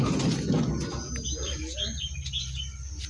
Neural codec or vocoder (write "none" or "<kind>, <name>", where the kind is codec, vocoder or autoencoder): none